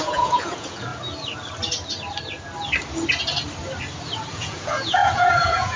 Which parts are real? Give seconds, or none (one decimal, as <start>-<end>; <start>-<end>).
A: 0.9-4.3